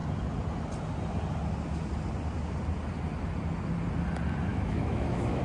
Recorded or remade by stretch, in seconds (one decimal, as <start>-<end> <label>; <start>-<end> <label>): 0.0-4.5 recorded; 4.5-5.4 remade